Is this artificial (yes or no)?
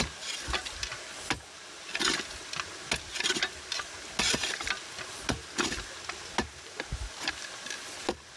no